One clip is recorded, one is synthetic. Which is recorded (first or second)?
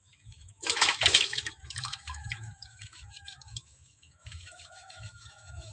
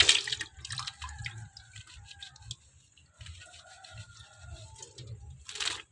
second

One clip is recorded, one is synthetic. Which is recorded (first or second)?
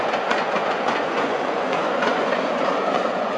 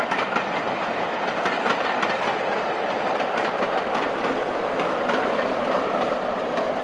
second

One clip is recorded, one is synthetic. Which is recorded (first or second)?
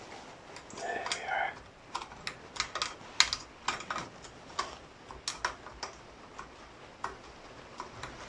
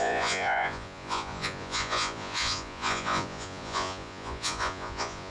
first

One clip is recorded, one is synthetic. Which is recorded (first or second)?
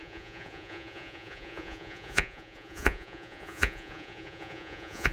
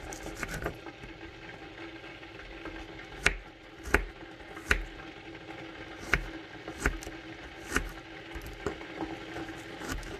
second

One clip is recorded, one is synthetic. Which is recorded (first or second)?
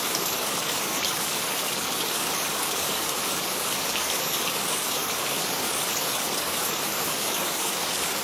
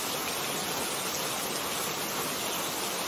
second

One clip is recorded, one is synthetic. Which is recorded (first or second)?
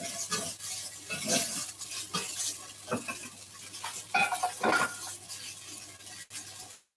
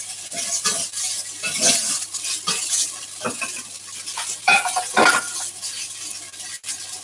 first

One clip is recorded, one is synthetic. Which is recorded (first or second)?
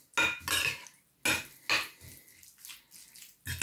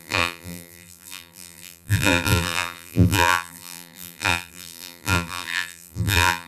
first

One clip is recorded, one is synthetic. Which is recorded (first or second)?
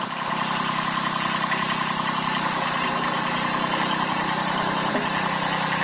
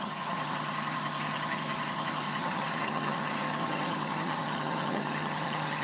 first